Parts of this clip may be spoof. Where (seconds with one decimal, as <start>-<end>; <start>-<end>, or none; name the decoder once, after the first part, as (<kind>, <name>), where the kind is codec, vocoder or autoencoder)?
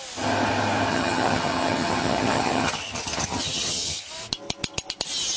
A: 0.9-4.1 (vocoder, HiFi-GAN)